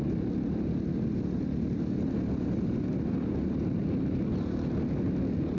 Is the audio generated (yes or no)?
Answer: no